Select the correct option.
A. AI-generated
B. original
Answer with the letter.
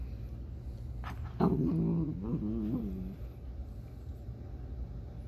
B